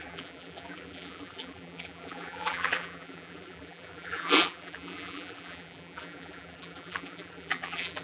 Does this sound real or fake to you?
fake